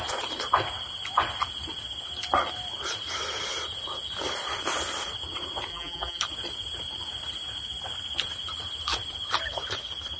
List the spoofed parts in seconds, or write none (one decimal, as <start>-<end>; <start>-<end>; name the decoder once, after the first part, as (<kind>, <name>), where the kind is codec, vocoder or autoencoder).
5.7-6.2 (vocoder, BigVGAN v2)